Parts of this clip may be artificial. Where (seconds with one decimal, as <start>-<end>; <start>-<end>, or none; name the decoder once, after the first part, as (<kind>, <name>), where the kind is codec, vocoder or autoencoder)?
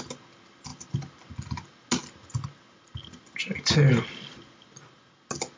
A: none